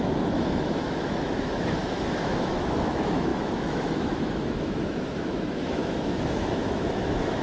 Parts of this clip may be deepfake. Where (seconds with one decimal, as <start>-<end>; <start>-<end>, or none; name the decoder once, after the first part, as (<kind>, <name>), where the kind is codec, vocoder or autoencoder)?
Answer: 0.0-7.4 (autoencoder, DAC-VAE)